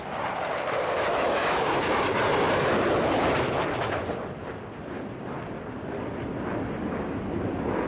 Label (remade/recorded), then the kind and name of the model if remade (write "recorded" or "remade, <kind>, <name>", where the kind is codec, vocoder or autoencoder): remade, vocoder, BigVGAN v2